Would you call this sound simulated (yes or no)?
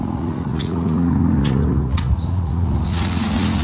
yes